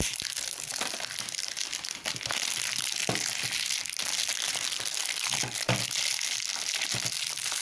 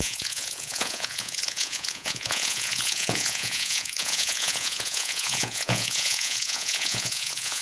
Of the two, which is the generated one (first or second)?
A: second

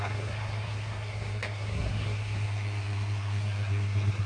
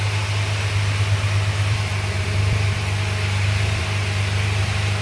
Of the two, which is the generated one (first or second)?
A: first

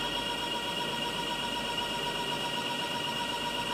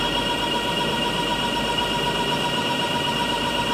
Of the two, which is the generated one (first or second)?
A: second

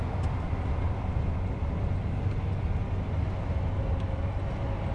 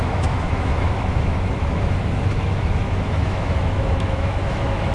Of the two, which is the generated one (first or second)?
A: second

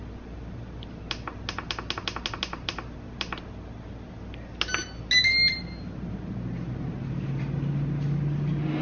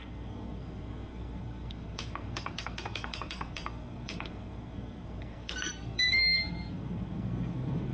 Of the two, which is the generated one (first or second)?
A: second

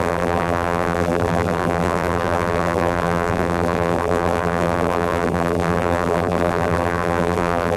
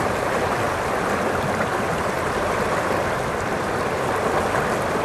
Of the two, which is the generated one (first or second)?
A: first